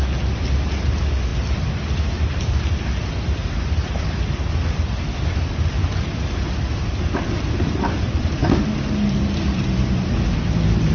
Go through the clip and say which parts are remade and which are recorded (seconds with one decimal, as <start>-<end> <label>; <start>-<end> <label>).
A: 0.0-8.4 remade; 8.4-9.1 recorded; 9.1-10.9 remade